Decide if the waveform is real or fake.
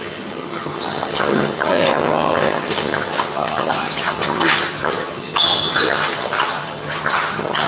fake